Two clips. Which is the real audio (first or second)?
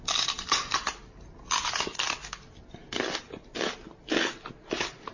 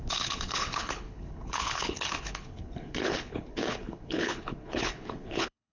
first